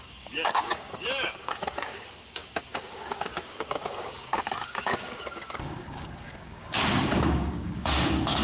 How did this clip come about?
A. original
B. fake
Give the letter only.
B